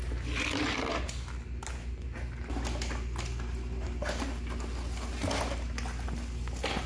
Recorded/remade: recorded